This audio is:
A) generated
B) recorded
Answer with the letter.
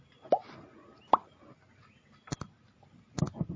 B